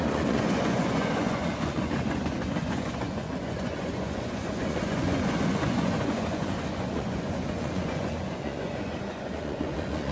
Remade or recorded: remade